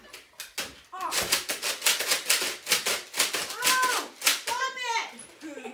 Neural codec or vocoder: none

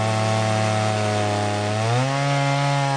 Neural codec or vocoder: none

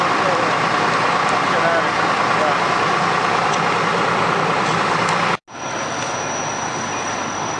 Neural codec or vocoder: none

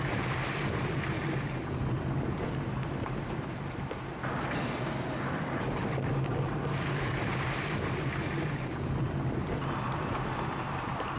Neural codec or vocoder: vocoder, BigVGAN v2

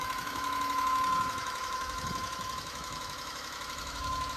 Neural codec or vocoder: autoencoder, DAC-VAE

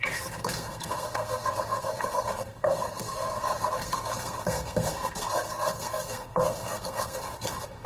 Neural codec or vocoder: codec, SNAC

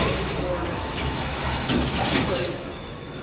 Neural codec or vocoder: autoencoder, DAC-VAE